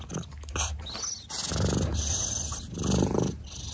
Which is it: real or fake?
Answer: real